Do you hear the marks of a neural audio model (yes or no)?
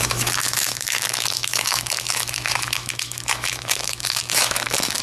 yes